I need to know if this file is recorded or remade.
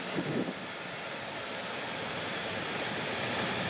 recorded